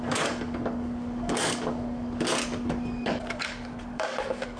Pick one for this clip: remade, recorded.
remade